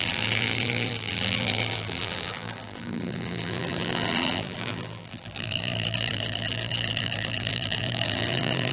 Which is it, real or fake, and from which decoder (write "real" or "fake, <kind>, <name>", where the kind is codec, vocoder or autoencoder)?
fake, vocoder, BigVGAN v2